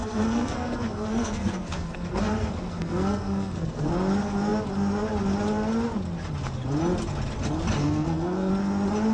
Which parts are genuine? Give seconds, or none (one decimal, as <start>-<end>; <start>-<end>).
3.9-7.8; 8.5-9.1